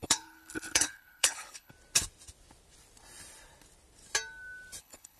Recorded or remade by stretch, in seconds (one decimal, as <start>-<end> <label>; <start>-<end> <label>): 0.0-1.7 remade; 1.7-4.8 recorded; 4.8-5.2 remade